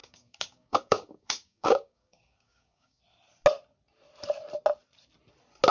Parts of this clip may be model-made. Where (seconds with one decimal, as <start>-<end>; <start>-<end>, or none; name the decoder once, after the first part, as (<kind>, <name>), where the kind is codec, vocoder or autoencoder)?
0.0-3.0 (codec, DAC)